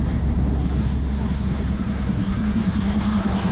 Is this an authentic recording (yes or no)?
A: no